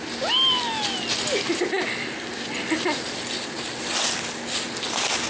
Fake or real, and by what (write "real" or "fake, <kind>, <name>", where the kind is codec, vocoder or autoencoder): real